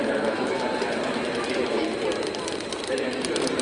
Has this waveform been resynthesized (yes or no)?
yes